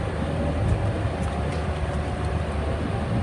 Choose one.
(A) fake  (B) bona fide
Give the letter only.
B